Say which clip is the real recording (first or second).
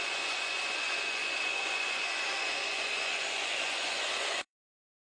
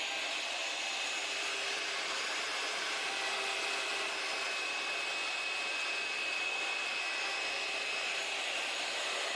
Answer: second